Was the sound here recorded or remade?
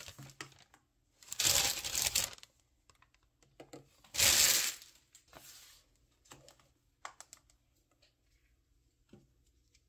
recorded